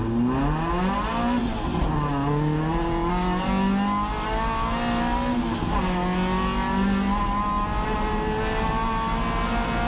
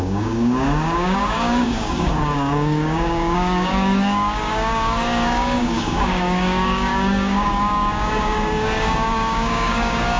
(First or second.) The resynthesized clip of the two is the second